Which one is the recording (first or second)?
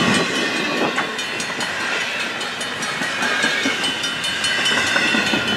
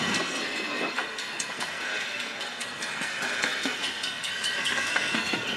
first